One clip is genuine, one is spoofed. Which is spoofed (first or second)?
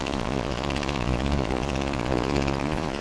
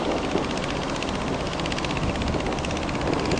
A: first